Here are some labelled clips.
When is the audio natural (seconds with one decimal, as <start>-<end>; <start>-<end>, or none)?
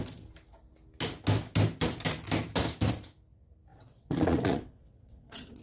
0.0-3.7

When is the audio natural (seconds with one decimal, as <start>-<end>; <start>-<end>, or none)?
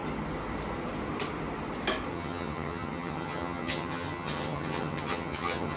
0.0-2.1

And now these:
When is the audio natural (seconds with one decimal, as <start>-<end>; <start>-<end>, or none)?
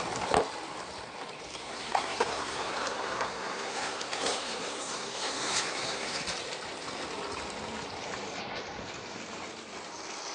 0.0-1.5; 6.2-10.3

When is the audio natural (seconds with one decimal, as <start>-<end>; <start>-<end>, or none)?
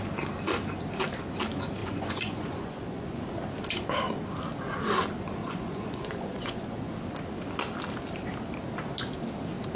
0.0-1.8; 3.2-5.4; 6.9-9.8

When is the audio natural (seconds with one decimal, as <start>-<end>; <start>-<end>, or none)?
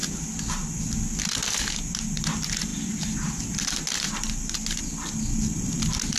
0.0-6.2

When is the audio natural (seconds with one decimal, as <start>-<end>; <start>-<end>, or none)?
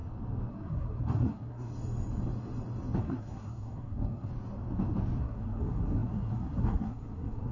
0.0-0.5; 1.7-3.0; 4.3-5.2